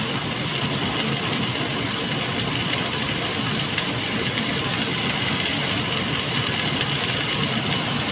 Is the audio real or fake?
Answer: real